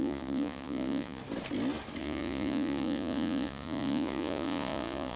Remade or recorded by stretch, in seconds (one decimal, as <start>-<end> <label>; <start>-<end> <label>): 0.0-1.2 remade; 1.2-2.0 recorded; 2.0-5.2 remade